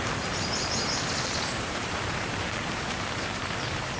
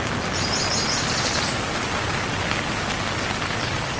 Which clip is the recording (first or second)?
second